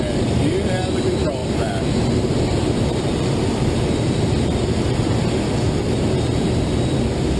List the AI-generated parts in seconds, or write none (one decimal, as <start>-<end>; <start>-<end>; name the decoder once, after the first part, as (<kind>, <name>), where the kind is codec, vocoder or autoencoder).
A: 1.4-5.8 (vocoder, BigVGAN v2)